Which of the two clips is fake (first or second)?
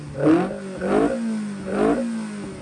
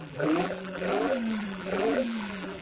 second